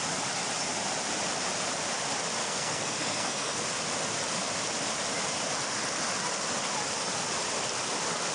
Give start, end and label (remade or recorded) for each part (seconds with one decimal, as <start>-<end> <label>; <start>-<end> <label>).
0.0-2.4 recorded; 2.4-3.6 remade; 3.6-8.3 recorded